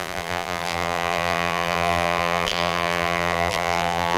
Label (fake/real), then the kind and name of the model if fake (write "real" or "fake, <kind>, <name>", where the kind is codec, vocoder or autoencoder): fake, vocoder, BigVGAN v2